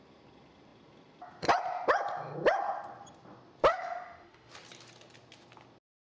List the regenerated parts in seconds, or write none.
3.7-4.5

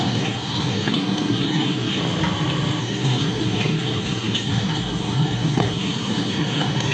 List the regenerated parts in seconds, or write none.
0.0-2.0; 2.8-6.9

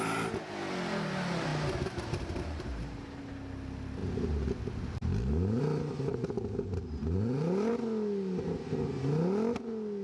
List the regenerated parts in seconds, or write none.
1.5-3.2; 6.1-7.7